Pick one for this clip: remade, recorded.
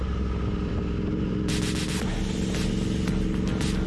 recorded